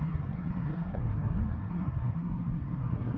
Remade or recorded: remade